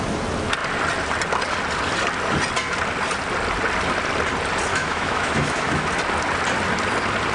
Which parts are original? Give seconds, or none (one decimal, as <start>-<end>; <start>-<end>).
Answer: 0.0-4.7; 5.9-7.3